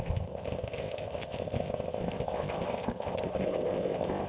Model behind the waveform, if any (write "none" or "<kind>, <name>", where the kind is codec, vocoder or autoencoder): codec, ZipCodec